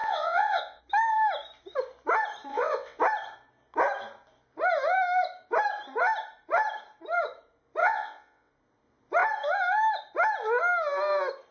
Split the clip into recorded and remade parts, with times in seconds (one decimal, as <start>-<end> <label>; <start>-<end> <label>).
0.0-0.8 remade; 0.8-2.5 recorded; 2.5-3.0 remade; 3.0-7.8 recorded; 7.8-8.5 remade; 8.5-11.5 recorded